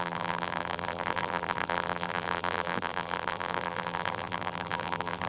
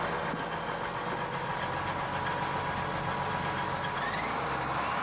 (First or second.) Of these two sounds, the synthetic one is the first